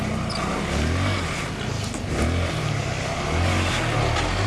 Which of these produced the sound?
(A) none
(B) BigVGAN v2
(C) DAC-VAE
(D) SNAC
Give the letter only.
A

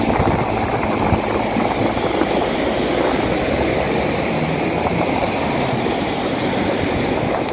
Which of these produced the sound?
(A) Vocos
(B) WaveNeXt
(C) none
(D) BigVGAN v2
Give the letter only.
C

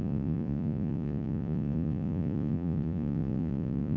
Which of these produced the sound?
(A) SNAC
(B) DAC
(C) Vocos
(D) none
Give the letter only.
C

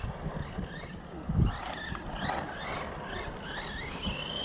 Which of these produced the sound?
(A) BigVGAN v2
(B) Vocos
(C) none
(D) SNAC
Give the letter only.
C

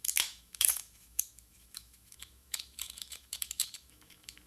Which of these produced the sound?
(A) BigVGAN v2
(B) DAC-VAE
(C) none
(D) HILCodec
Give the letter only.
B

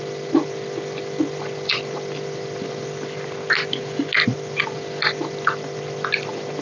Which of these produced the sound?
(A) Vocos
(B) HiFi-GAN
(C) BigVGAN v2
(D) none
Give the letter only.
D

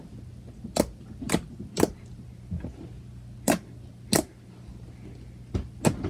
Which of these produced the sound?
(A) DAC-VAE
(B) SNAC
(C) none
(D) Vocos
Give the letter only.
C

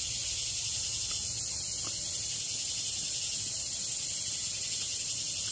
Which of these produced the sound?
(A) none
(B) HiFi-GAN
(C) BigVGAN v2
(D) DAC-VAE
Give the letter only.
A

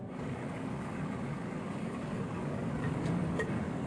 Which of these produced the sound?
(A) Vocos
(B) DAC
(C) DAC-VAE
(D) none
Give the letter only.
B